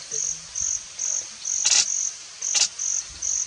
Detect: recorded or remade recorded